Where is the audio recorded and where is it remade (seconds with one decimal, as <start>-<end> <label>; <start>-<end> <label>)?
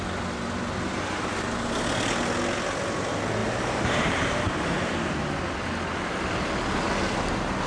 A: 0.0-3.4 recorded; 3.4-4.9 remade; 4.9-7.7 recorded